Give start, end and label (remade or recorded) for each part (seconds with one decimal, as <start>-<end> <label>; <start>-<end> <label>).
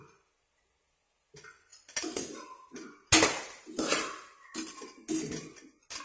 0.0-6.0 recorded